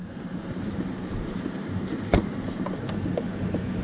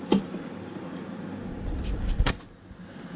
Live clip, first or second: second